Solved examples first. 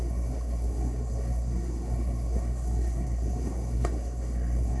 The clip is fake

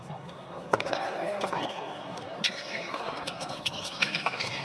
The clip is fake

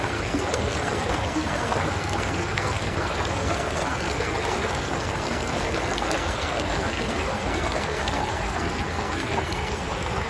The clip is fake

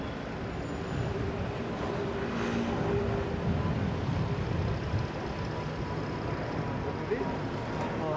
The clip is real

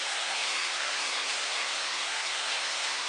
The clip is fake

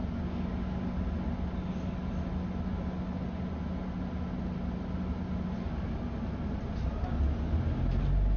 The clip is real